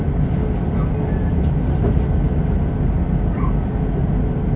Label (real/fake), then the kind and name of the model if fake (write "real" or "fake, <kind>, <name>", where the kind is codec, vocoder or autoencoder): real